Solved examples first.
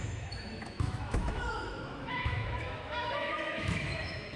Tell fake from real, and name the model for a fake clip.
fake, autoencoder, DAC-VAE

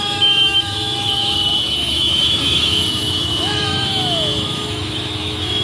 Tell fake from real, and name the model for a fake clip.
fake, autoencoder, DAC-VAE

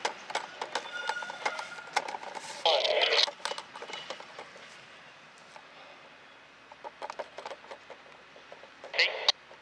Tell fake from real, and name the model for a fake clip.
real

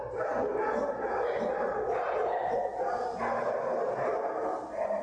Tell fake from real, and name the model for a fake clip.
real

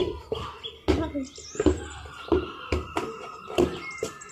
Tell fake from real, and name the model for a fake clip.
real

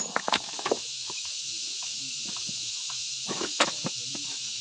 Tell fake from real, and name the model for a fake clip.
fake, autoencoder, DAC-VAE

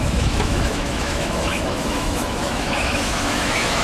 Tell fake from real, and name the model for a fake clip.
fake, autoencoder, DAC-VAE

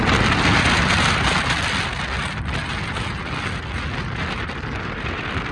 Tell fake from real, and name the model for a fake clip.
real